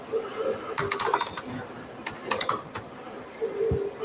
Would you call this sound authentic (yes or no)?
yes